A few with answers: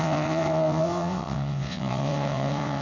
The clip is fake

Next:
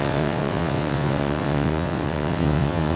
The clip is fake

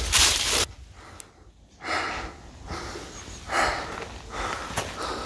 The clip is real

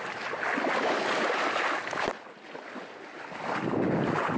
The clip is real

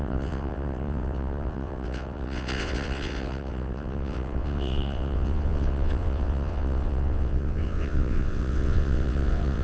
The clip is fake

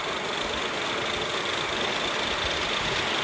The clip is real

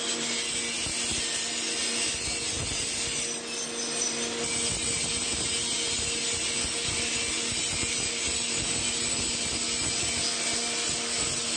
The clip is real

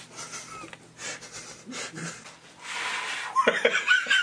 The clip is real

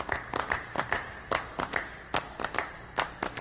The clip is real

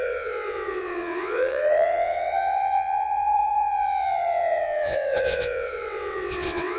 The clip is fake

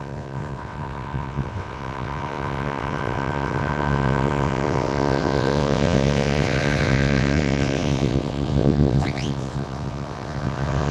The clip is fake